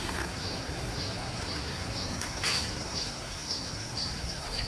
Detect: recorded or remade remade